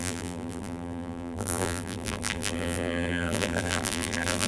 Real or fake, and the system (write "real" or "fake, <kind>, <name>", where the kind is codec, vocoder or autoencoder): fake, vocoder, BigVGAN v2